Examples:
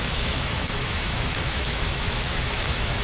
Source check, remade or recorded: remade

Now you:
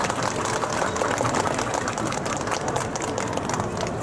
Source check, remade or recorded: recorded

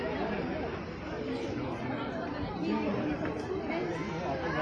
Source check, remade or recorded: recorded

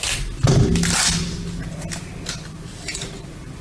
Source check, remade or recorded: recorded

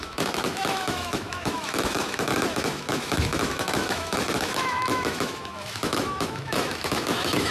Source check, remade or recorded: remade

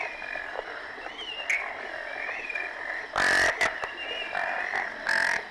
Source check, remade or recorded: recorded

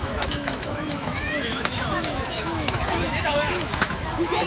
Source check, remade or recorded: remade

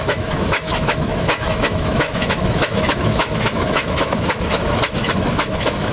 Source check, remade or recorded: remade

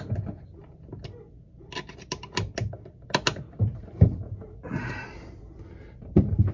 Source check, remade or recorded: recorded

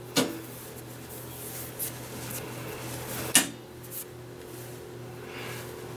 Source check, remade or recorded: recorded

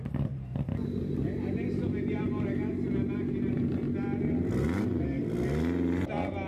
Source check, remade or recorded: recorded